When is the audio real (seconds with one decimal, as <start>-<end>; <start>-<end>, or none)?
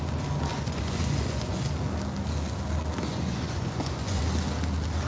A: 0.0-0.5; 1.7-3.1; 4.2-5.1